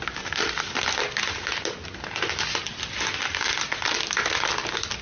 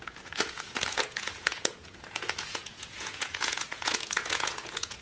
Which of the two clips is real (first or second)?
first